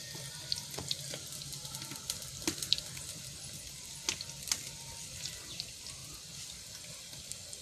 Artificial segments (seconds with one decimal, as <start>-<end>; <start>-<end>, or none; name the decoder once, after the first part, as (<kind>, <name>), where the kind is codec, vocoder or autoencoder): none